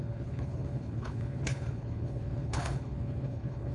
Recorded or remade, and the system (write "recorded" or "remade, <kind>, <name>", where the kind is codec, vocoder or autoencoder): remade, codec, HILCodec